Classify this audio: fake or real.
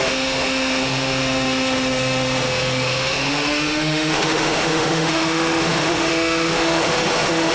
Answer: fake